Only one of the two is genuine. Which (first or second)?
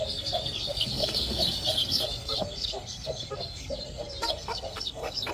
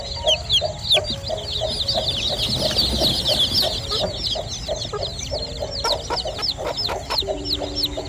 second